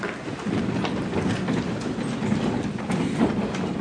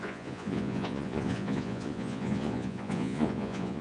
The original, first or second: first